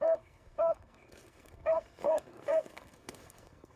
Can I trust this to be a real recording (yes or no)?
no